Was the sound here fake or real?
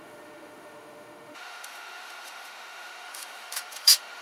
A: fake